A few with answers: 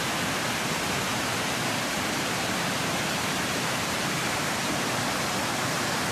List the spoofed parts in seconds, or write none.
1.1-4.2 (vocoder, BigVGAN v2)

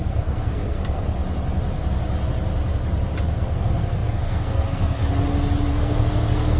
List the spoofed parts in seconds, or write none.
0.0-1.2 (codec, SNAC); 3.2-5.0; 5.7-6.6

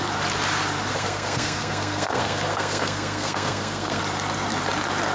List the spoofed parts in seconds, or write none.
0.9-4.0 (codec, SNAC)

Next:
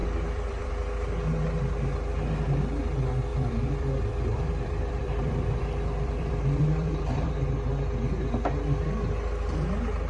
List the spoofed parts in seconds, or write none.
0.0-0.7 (vocoder, BigVGAN v2); 3.3-7.3

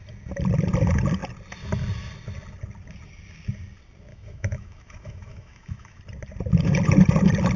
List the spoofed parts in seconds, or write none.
4.1-6.0 (autoencoder, DAC-VAE)

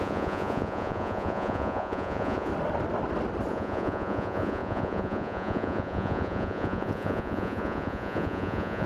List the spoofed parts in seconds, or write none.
0.0-2.5 (vocoder, Vocos); 3.5-8.9

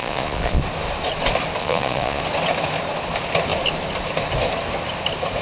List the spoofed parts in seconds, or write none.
0.0-0.6 (vocoder, Vocos); 1.6-2.2